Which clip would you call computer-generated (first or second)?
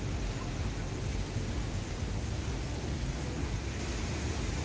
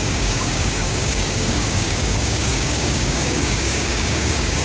second